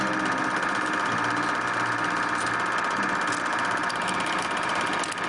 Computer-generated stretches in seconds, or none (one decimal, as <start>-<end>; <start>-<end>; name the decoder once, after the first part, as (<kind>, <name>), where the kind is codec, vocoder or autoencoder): 3.5-4.8 (vocoder, BigVGAN v2)